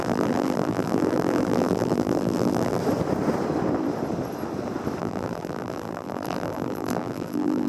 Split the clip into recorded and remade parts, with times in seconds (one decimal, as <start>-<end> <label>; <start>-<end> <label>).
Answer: 0.0-2.8 remade; 2.8-5.0 recorded; 5.0-7.7 remade